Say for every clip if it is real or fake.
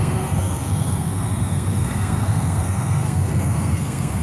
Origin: fake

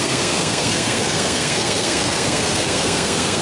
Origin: fake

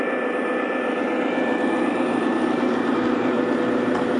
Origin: real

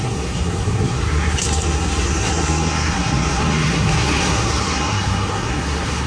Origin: fake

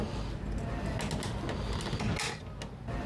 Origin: real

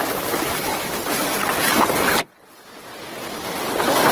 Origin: real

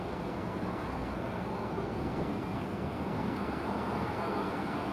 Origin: fake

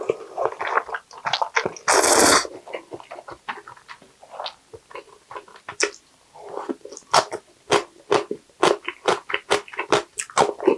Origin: real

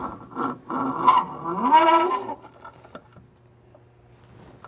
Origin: real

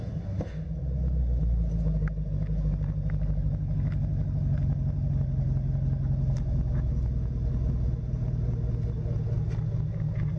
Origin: real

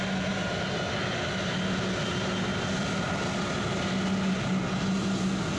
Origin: real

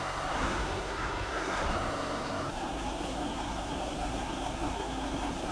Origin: fake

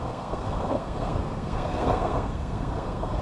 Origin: fake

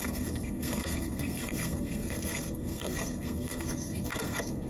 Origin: fake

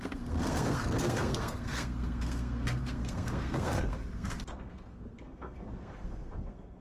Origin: fake